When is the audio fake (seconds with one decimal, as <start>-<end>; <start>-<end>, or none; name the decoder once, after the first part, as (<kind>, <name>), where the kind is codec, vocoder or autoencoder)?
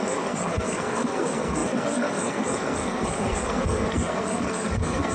0.0-5.1 (codec, SNAC)